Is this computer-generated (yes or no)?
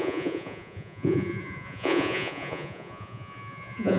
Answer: yes